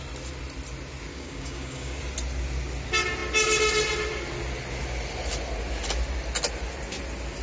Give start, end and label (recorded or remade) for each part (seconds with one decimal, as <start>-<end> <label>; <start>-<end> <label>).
0.0-1.1 recorded; 1.1-2.0 remade; 2.0-7.4 recorded